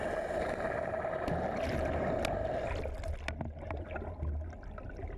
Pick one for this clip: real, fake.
real